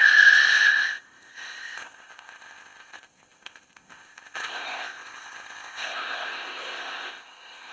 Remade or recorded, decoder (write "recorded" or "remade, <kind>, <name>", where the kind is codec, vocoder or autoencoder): remade, codec, ZipCodec